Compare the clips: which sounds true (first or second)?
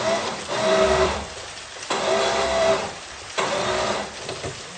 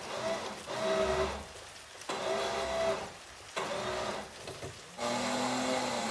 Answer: second